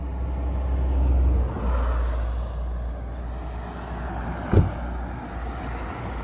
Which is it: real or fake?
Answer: real